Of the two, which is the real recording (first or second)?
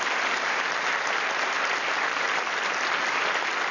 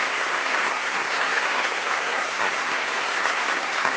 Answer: first